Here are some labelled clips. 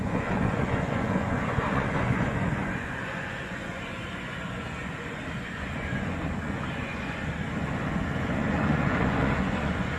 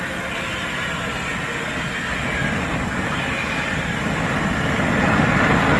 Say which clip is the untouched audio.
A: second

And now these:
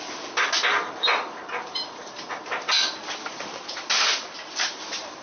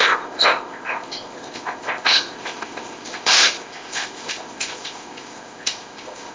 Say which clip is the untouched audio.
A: first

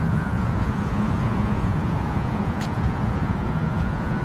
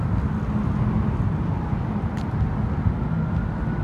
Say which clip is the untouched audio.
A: second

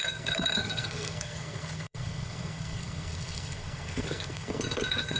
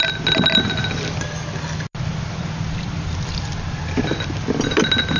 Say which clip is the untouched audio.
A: second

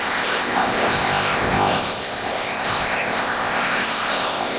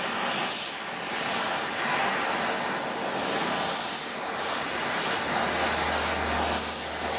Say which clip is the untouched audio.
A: second